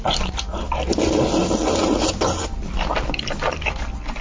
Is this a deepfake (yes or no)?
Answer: no